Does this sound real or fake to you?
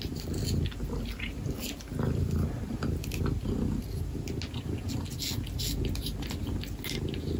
real